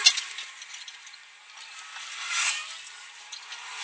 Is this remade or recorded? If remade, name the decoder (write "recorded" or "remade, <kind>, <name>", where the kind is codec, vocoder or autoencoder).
recorded